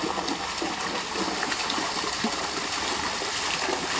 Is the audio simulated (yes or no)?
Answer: no